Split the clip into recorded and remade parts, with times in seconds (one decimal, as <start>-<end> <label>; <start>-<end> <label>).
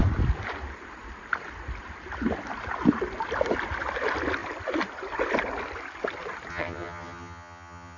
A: 0.0-6.5 recorded; 6.5-8.0 remade